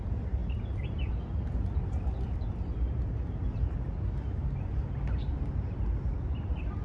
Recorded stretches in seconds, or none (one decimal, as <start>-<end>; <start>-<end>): 0.0-6.8